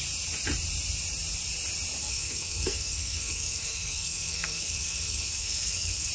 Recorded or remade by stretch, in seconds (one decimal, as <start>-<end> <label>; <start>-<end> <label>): 0.0-2.0 recorded; 2.0-6.1 remade